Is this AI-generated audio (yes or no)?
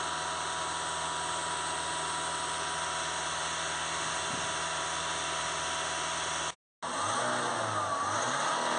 no